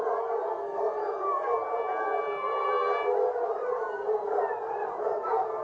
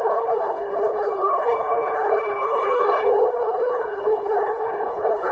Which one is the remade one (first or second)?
second